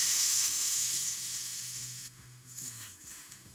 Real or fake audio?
fake